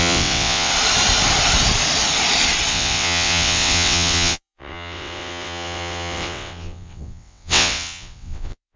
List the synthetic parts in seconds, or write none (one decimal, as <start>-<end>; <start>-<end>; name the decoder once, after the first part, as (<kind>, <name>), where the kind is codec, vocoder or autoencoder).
0.0-0.7 (vocoder, WaveNeXt); 2.7-8.8